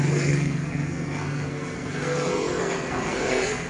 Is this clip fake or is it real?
fake